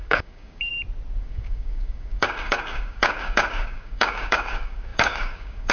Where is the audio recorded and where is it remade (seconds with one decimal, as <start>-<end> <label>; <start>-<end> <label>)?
0.0-0.7 remade; 0.7-1.2 recorded; 1.2-5.7 remade